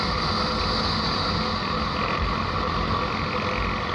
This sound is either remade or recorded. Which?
recorded